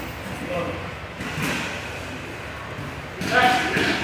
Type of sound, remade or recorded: recorded